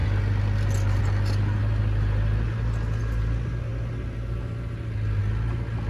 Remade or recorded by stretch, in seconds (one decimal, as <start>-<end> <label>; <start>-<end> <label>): 0.0-5.9 recorded